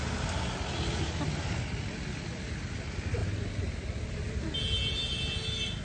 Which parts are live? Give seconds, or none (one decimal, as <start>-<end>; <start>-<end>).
0.0-5.8